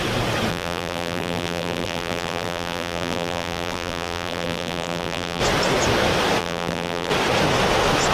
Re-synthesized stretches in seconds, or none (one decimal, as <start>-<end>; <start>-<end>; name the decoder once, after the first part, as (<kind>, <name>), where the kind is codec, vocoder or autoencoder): 0.5-5.4 (vocoder, BigVGAN v2); 6.4-7.1